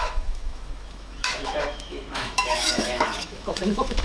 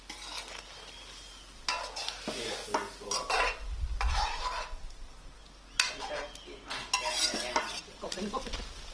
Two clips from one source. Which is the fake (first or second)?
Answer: first